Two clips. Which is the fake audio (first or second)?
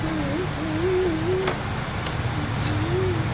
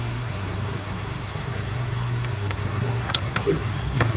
second